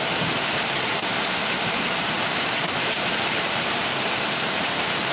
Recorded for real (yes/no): no